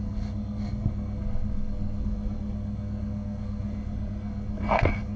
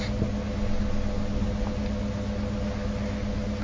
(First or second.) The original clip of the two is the second